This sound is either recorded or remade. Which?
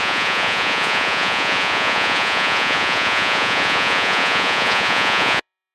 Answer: remade